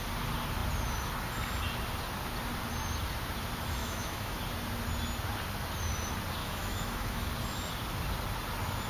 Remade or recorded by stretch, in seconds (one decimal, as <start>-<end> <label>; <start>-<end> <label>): 0.0-3.8 recorded; 3.8-4.4 remade; 4.4-6.4 recorded; 6.4-7.3 remade; 7.3-8.9 recorded